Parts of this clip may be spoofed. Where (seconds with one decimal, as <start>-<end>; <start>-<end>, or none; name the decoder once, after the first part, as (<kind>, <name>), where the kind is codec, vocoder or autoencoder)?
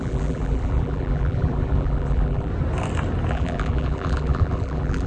0.0-2.5 (vocoder, BigVGAN v2); 3.3-5.1